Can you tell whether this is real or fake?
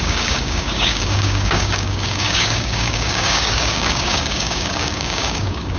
fake